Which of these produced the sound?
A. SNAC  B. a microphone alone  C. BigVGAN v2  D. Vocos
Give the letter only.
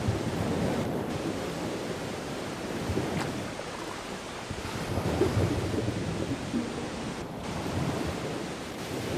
C